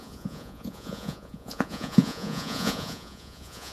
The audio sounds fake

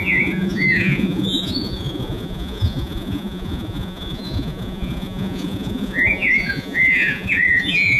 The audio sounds fake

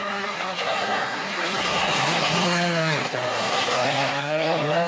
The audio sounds fake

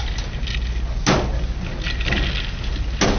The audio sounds real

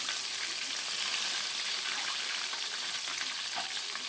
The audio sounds real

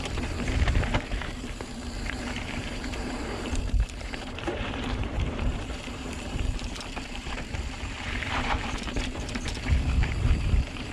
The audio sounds fake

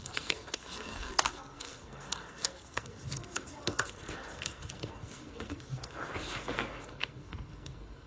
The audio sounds fake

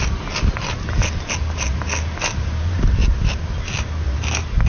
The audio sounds real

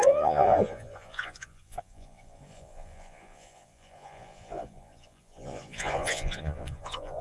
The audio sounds fake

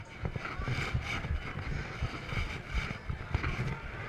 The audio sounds real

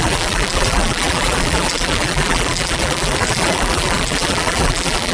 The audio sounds fake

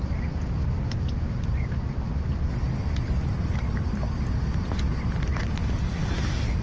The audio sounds real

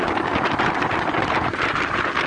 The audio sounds real